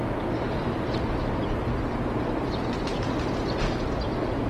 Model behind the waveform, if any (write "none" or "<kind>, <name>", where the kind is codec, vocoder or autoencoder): none